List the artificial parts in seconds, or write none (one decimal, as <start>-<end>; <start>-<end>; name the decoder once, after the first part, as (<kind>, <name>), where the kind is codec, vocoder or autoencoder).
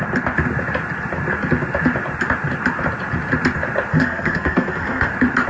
3.9-5.1 (codec, SNAC)